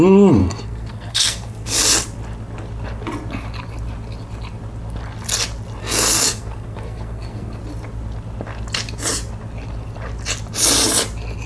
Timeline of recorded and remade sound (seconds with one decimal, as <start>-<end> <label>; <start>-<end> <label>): 0.0-0.4 recorded; 0.4-1.8 remade; 1.8-5.8 recorded; 5.8-7.6 remade; 7.6-11.5 recorded